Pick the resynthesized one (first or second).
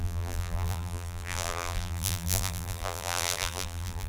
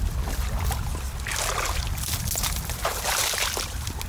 first